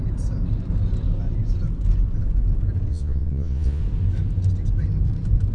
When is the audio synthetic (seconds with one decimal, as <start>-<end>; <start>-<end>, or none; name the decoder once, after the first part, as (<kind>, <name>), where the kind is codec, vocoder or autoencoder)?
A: 2.9-3.8 (vocoder, Vocos)